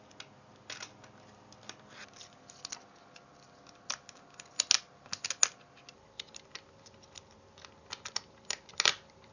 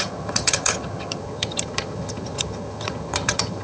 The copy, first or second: second